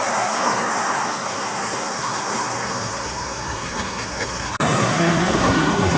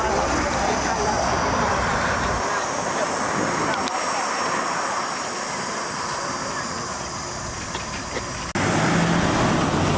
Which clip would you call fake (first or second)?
first